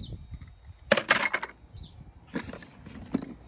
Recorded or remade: recorded